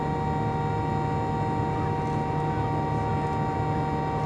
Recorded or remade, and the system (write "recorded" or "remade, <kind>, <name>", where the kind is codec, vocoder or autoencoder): recorded